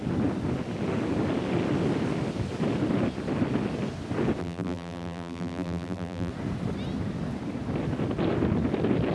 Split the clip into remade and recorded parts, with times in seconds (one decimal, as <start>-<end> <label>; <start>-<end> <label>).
0.0-4.4 recorded; 4.4-6.3 remade; 6.3-9.1 recorded